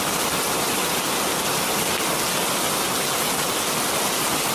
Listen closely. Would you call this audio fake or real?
real